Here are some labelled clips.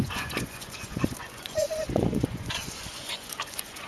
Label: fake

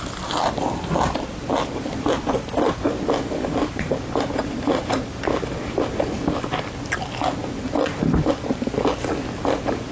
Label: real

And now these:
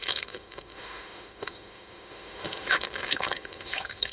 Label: fake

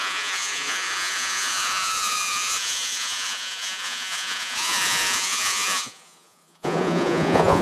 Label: fake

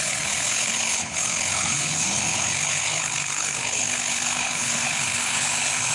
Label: fake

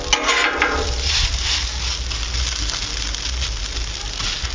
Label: real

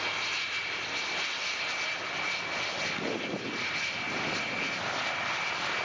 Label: real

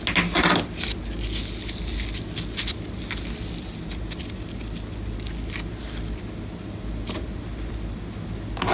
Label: real